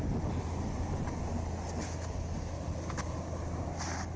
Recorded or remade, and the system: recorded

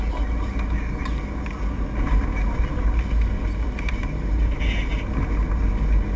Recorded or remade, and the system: recorded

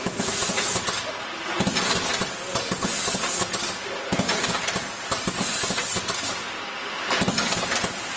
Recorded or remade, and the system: recorded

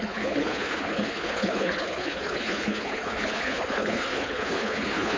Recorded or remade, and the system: remade, codec, HILCodec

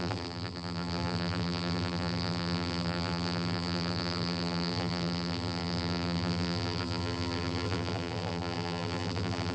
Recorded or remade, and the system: remade, vocoder, BigVGAN v2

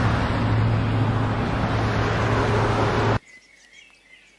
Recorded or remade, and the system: recorded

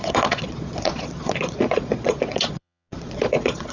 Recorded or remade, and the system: remade, vocoder, Vocos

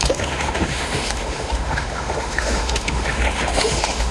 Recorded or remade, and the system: remade, autoencoder, DAC-VAE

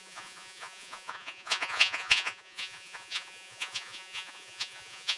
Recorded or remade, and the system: remade, vocoder, Vocos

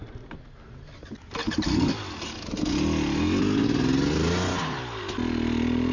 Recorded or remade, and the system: recorded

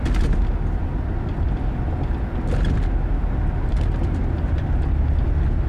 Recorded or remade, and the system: recorded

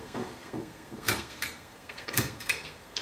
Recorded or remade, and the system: remade, codec, SNAC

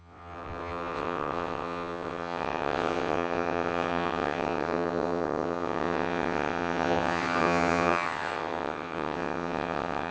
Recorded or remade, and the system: remade, vocoder, WaveNeXt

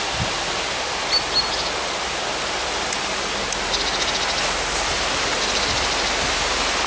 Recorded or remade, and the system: recorded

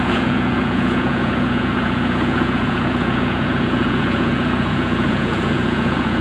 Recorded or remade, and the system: remade, vocoder, Vocos